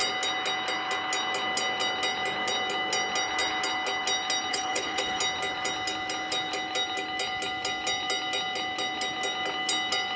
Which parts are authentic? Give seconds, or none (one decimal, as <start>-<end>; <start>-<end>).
0.0-4.5; 5.2-10.2